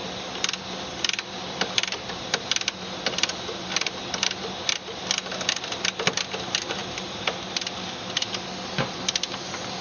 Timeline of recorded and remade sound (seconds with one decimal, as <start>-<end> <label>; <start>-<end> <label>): 0.0-9.8 recorded